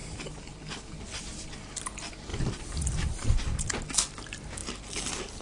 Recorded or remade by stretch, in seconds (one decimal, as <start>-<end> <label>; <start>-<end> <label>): 0.0-2.3 recorded; 2.3-3.7 remade; 3.7-5.4 recorded

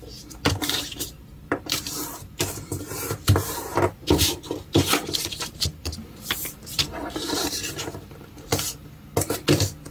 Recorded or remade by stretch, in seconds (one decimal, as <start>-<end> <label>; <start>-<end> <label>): 0.0-8.5 remade; 8.5-9.9 recorded

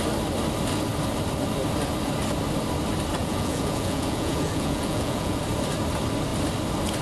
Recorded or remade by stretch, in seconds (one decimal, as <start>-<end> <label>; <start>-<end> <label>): 0.0-3.2 recorded; 3.2-5.4 remade; 5.4-7.0 recorded

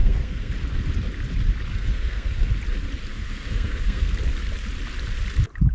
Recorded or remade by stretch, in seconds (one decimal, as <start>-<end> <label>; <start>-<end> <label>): 0.0-0.5 remade; 0.5-1.7 recorded; 1.7-2.5 remade; 2.5-3.1 recorded; 3.1-4.1 remade; 4.1-5.7 recorded

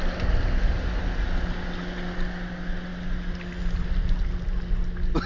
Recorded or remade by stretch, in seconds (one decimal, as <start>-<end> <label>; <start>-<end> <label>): 0.0-5.3 recorded

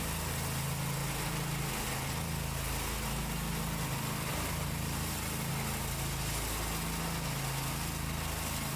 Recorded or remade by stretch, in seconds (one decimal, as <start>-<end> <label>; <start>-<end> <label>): 0.0-4.3 recorded; 4.3-5.5 remade; 5.5-8.8 recorded

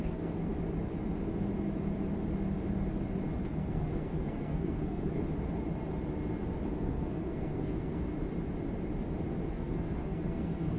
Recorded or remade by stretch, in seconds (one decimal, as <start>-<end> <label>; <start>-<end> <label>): 0.0-0.5 remade; 0.5-3.4 recorded; 3.4-5.2 remade; 5.2-6.8 recorded; 6.8-8.1 remade; 8.1-9.5 recorded; 9.5-10.8 remade